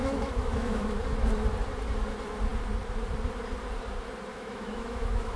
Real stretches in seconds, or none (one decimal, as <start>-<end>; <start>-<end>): 1.0-4.3